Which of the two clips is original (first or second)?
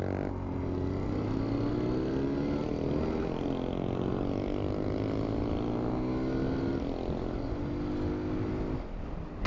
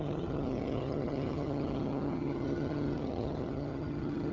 first